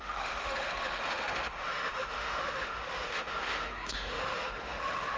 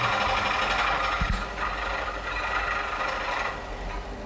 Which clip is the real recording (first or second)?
second